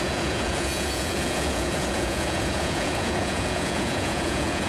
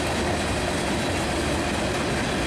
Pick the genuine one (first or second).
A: second